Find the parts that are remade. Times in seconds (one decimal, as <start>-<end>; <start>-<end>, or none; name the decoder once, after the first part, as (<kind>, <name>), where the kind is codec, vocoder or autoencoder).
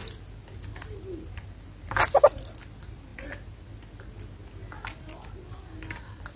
none